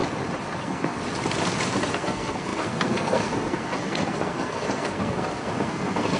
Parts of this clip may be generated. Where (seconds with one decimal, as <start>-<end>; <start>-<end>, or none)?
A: 0.6-1.0; 1.9-6.2